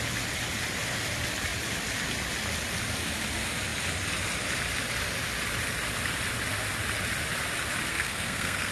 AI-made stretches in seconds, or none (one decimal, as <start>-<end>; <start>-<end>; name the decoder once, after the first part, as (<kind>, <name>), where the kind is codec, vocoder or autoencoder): 7.9-8.7 (codec, SNAC)